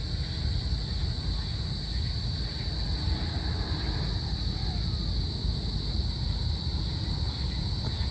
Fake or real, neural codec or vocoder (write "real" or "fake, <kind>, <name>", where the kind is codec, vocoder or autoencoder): real